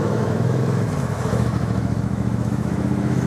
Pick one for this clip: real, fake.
fake